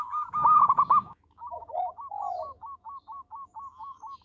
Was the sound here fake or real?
fake